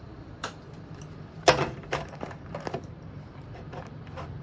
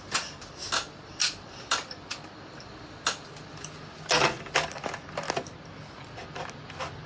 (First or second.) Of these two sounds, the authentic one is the second